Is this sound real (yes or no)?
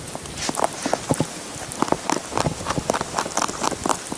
yes